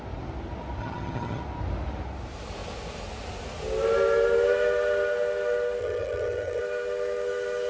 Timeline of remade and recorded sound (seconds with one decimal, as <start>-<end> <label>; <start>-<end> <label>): 0.0-0.8 recorded; 0.8-1.4 remade; 1.4-5.8 recorded; 5.8-6.6 remade; 6.6-7.7 recorded